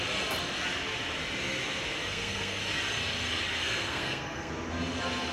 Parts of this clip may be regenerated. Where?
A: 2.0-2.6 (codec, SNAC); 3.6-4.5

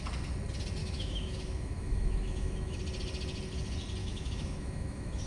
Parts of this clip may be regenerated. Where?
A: 0.8-2.8 (autoencoder, DAC-VAE); 4.0-5.3